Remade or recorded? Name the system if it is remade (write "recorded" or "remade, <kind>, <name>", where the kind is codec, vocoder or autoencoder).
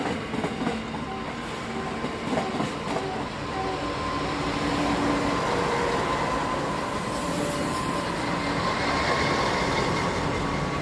recorded